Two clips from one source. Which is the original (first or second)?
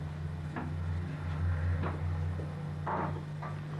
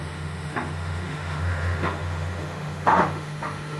first